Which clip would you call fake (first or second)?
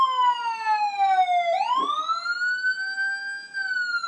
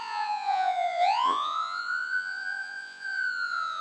second